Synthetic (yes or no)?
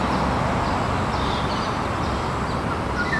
no